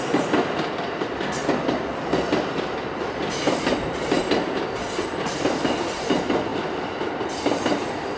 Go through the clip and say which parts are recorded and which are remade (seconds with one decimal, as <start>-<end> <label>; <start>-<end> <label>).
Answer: 0.0-8.2 recorded